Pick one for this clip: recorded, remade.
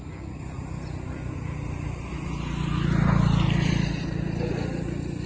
recorded